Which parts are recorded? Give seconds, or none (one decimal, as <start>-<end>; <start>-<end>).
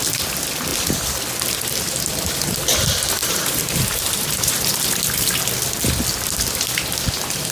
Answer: 0.0-3.2; 4.8-7.5